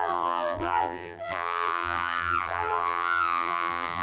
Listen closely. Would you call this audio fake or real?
fake